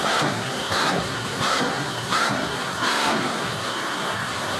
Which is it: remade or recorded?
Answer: remade